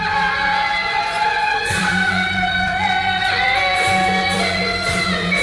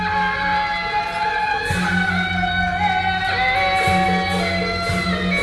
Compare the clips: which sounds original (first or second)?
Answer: second